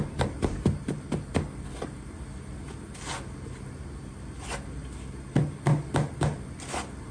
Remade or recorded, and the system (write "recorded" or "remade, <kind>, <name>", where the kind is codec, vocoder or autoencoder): recorded